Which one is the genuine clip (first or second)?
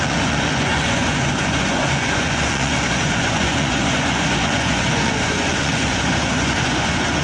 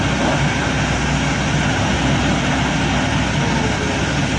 second